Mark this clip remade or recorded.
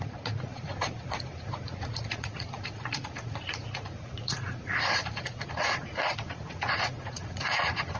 remade